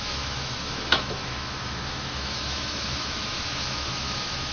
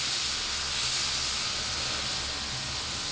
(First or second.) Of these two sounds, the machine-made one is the first